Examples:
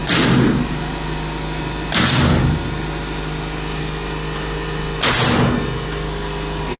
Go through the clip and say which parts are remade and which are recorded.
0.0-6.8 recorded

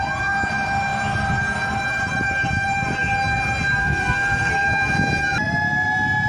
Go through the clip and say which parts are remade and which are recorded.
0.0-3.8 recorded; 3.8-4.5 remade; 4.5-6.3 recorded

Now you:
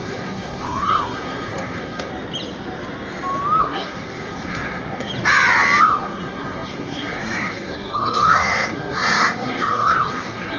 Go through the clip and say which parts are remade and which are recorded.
0.0-2.1 remade; 2.1-3.6 recorded; 3.6-5.1 remade; 5.1-5.8 recorded; 5.8-10.6 remade

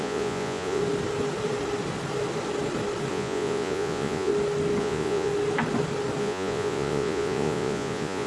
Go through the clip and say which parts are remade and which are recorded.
0.0-0.8 remade; 0.8-3.1 recorded; 3.1-4.3 remade; 4.3-4.8 recorded; 4.8-5.3 remade; 5.3-6.2 recorded; 6.2-8.3 remade